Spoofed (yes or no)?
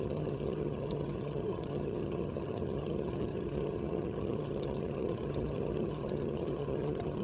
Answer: yes